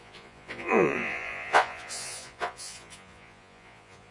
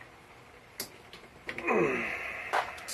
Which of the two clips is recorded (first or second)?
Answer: second